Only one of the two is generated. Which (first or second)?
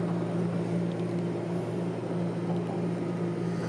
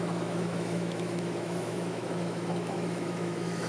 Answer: second